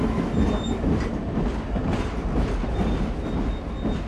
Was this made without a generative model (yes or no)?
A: yes